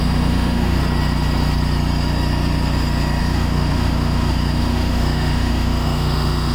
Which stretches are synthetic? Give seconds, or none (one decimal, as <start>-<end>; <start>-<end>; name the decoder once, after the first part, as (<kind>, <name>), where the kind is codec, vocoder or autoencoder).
0.0-0.8 (autoencoder, DAC-VAE); 3.2-6.5